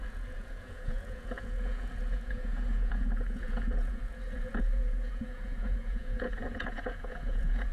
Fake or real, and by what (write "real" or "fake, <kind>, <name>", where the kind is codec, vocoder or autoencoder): fake, vocoder, Vocos